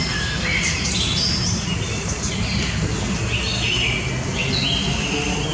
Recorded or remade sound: recorded